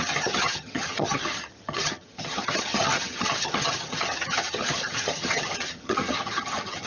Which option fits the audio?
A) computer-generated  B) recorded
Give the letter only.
A